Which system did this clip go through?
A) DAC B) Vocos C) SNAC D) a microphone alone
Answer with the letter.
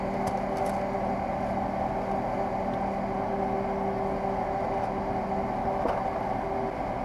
D